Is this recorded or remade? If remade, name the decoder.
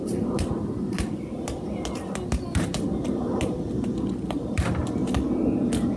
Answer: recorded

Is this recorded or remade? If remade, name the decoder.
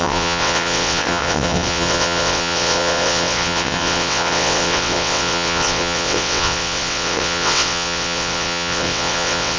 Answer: remade, vocoder, WaveNeXt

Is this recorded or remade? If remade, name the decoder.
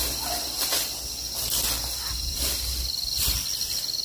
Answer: recorded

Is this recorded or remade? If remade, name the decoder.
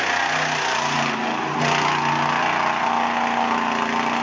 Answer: recorded